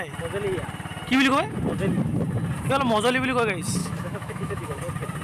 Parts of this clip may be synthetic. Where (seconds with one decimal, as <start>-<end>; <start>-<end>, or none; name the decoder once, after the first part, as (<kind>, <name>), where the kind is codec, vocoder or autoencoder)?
3.8-4.8 (autoencoder, DAC-VAE)